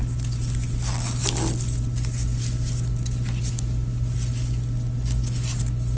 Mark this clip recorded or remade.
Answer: recorded